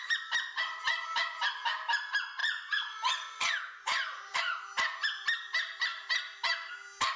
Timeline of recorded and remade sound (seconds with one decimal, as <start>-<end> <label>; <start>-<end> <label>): 0.0-2.4 recorded; 2.4-4.4 remade; 4.4-7.2 recorded